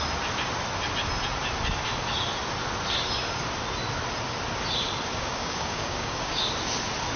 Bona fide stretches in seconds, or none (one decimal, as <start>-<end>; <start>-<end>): 0.0-5.1; 6.4-7.2

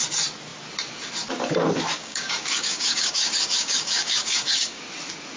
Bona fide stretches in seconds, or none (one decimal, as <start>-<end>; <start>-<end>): 0.0-2.0; 4.8-5.4

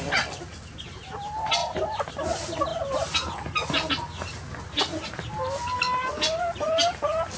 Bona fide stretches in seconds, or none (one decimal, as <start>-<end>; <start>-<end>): 0.0-7.4

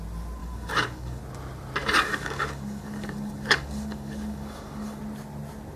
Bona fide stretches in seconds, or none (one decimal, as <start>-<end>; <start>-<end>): 0.0-0.4; 1.2-1.8; 5.0-5.8

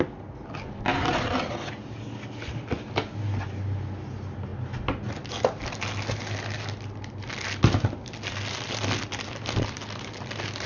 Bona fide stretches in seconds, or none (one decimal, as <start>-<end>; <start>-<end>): 0.0-10.7

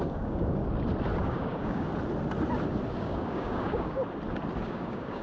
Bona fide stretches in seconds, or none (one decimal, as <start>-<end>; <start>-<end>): 0.6-1.2; 1.9-3.0; 4.0-4.6